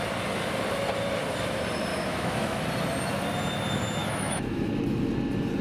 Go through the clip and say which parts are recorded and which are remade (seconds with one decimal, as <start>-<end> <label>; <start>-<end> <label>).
0.0-1.9 recorded; 1.9-2.6 remade; 2.6-4.0 recorded; 4.0-4.7 remade; 4.7-5.6 recorded